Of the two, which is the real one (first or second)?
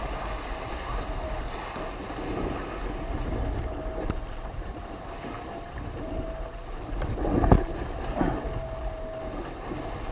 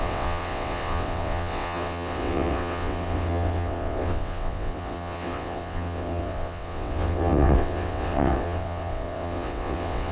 first